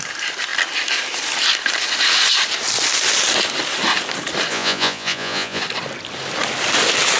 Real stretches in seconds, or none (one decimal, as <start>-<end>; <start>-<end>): 0.0-4.5; 5.6-7.2